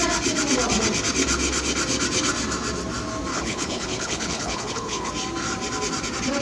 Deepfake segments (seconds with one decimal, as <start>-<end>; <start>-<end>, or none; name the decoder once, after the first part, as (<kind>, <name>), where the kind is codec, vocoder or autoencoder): 3.3-5.1 (codec, HILCodec)